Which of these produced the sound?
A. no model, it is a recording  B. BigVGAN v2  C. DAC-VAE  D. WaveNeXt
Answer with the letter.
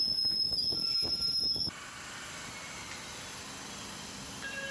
A